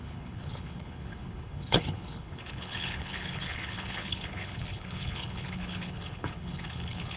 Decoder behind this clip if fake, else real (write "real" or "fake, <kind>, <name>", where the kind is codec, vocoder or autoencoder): fake, codec, HILCodec